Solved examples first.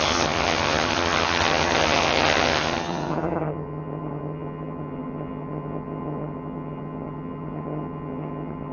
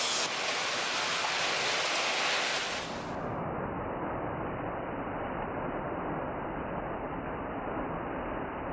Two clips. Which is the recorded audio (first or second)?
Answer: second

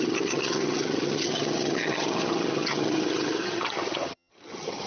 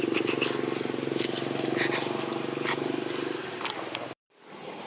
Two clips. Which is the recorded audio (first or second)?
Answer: second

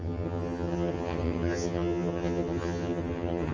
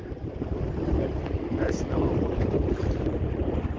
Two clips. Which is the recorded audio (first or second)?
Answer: second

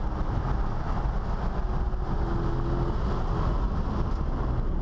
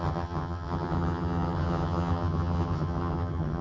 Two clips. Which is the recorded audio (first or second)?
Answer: first